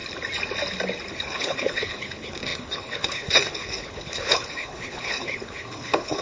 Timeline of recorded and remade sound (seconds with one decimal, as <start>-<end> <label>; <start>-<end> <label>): 0.0-1.1 recorded; 1.1-6.2 remade